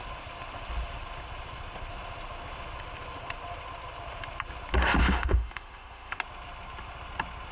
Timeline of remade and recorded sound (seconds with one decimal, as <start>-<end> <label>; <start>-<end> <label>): 0.0-5.0 recorded; 5.0-6.2 remade; 6.2-7.5 recorded